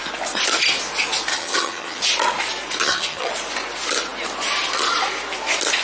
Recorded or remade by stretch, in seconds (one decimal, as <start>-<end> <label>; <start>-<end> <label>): 0.0-1.3 recorded; 1.3-2.0 remade; 2.0-2.8 recorded; 2.8-3.3 remade; 3.3-5.8 recorded